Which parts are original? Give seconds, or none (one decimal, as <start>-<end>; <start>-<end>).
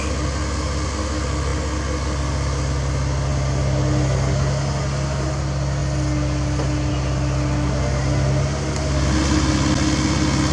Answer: 0.0-10.5